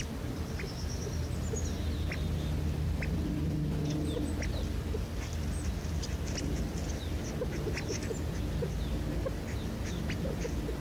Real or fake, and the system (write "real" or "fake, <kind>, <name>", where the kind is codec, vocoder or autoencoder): real